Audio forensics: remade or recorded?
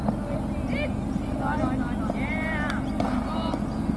recorded